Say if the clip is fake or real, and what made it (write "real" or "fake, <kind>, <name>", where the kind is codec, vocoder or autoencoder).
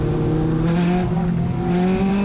real